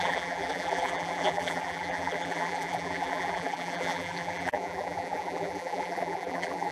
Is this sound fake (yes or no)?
yes